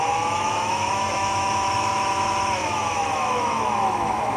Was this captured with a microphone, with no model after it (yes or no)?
no